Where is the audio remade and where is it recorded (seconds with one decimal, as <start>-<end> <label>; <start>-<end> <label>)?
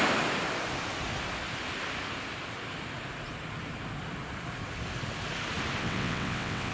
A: 0.0-5.8 recorded; 5.8-6.7 remade